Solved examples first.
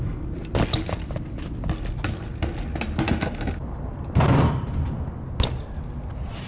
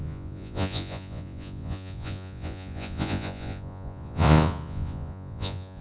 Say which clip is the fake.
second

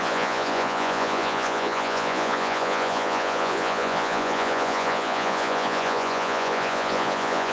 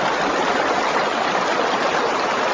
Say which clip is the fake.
first